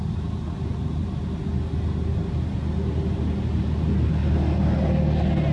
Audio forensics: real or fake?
real